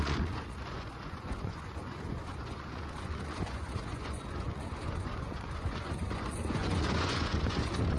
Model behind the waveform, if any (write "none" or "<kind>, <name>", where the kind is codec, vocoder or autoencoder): vocoder, Vocos